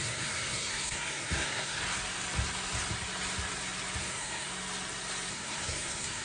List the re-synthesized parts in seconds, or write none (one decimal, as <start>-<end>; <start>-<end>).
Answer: 0.0-1.8; 4.0-4.5; 5.3-6.2